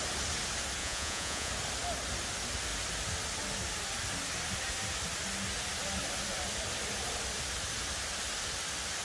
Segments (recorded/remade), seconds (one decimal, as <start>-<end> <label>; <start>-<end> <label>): 0.0-0.8 recorded; 0.8-1.5 remade; 1.5-9.0 recorded